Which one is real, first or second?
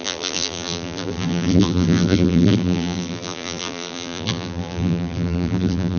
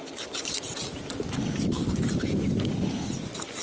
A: second